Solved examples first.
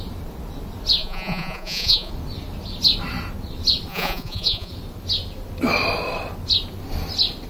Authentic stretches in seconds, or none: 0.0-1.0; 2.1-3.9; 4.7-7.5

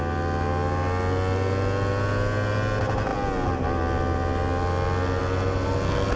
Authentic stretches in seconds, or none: 0.0-6.2

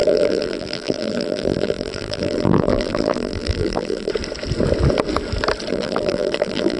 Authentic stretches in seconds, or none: 4.1-5.7

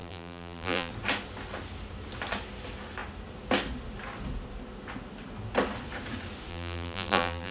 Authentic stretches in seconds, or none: 0.9-6.5

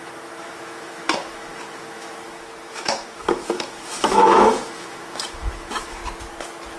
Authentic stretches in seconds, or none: 6.0-6.8